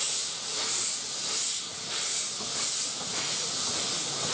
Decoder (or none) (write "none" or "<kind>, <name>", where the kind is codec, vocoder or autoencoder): none